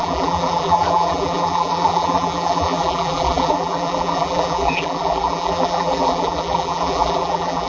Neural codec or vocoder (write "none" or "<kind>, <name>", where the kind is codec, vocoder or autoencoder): vocoder, BigVGAN v2